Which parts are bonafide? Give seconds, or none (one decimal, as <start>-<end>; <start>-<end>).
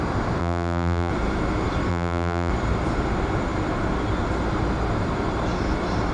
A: 0.0-0.4; 1.1-1.9; 2.5-6.1